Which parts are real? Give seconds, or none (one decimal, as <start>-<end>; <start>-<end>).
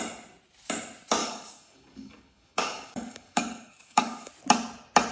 0.0-1.2; 4.3-5.1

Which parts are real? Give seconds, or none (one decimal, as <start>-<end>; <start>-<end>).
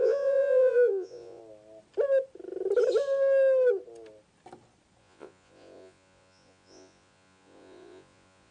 1.4-5.0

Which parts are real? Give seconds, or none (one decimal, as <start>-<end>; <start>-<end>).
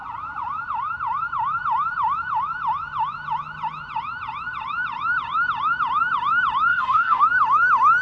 0.0-6.7; 7.2-8.0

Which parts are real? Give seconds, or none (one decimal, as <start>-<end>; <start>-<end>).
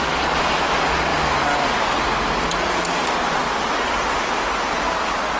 0.0-5.4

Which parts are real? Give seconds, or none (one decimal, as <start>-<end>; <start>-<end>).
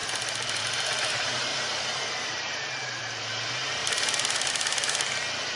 0.0-1.5; 3.0-3.8; 4.5-5.6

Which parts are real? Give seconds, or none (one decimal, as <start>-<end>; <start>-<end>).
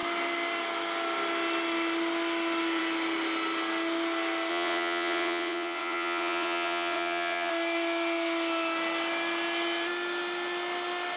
0.0-4.5; 7.5-11.2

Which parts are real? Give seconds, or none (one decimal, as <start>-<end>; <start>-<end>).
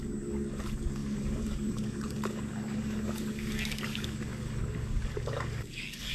none